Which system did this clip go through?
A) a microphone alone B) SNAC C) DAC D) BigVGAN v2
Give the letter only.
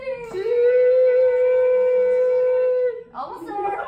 A